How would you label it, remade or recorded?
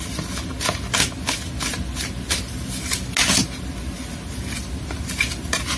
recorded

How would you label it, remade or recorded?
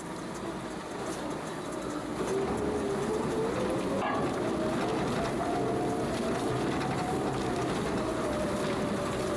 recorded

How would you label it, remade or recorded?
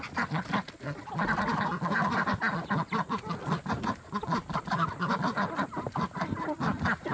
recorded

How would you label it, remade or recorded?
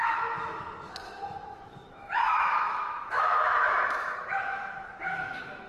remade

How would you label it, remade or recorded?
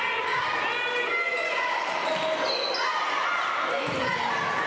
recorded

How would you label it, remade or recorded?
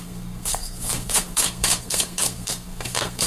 remade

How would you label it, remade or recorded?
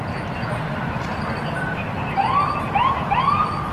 recorded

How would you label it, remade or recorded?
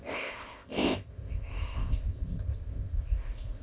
remade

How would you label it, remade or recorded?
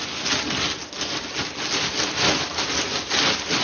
recorded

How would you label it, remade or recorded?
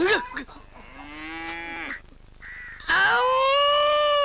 recorded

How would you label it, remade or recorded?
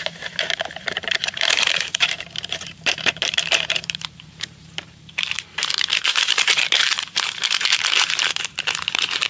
remade